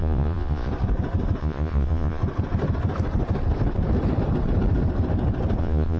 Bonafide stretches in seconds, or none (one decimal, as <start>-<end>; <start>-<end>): 0.7-1.4; 2.2-5.6